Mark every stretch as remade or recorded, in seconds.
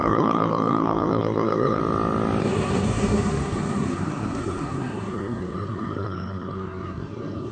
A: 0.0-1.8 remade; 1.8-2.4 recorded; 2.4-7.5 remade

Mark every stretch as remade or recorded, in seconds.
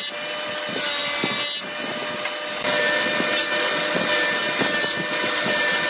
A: 0.0-5.9 recorded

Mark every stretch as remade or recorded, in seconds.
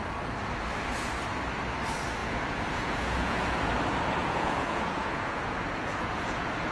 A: 0.0-2.2 recorded; 2.2-3.7 remade; 3.7-4.2 recorded; 4.2-6.7 remade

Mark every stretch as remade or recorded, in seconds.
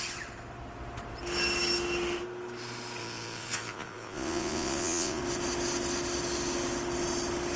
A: 0.0-3.0 recorded; 3.0-5.2 remade; 5.2-7.6 recorded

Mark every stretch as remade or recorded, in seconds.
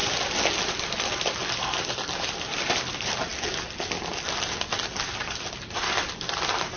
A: 0.0-0.6 recorded; 0.6-3.3 remade; 3.3-5.2 recorded; 5.2-6.8 remade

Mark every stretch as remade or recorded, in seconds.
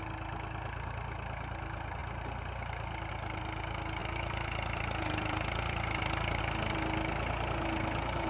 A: 0.0-4.0 recorded; 4.0-6.4 remade; 6.4-8.3 recorded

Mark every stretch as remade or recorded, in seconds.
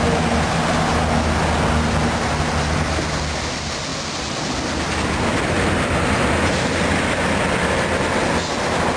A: 0.0-9.0 recorded